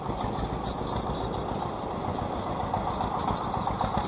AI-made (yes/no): no